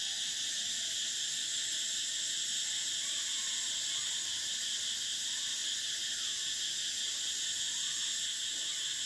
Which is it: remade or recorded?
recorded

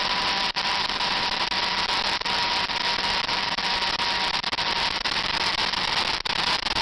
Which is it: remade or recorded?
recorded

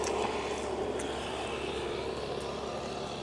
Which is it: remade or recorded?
recorded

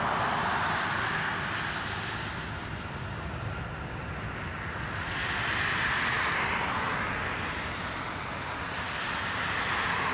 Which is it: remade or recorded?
recorded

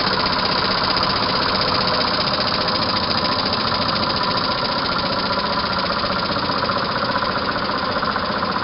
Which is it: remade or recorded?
recorded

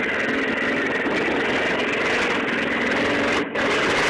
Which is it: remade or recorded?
recorded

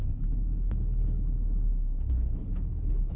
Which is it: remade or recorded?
remade